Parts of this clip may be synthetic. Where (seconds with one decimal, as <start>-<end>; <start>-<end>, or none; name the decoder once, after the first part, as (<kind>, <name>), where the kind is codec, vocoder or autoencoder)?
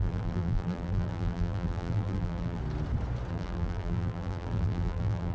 0.0-2.6 (vocoder, BigVGAN v2); 3.3-5.3